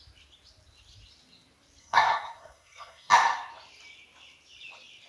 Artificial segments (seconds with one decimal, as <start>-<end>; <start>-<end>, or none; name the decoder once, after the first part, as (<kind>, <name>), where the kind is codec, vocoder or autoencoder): 1.8-3.1 (codec, SNAC)